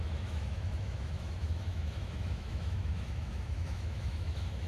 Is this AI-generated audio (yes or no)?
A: yes